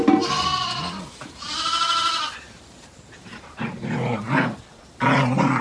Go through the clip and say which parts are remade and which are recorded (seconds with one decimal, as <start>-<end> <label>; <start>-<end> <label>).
0.0-1.2 recorded; 1.2-4.6 remade; 4.6-5.6 recorded